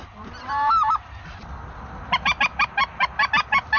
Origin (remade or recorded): recorded